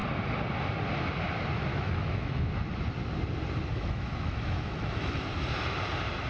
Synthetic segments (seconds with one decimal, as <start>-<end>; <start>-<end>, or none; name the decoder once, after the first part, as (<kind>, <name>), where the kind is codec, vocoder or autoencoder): 1.7-2.4 (autoencoder, DAC-VAE); 3.7-5.2